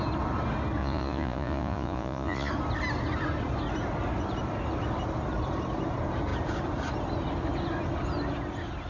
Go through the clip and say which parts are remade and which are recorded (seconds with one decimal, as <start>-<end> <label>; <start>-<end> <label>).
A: 0.0-0.8 recorded; 0.8-2.5 remade; 2.5-8.9 recorded